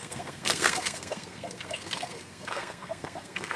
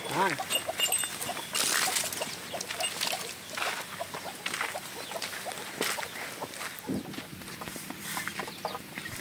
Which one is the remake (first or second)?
first